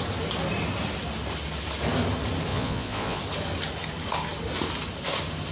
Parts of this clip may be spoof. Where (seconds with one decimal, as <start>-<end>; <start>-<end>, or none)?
2.5-3.2